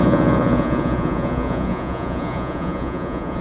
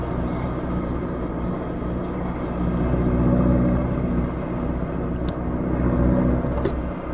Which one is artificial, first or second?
first